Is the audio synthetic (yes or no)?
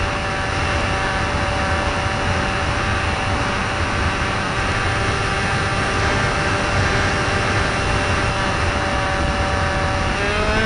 no